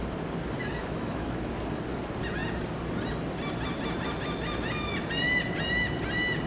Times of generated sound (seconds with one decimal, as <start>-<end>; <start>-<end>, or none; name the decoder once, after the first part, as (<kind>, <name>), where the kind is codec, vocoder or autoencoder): 0.8-1.5 (autoencoder, DAC-VAE)